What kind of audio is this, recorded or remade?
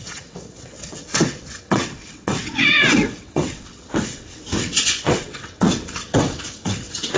remade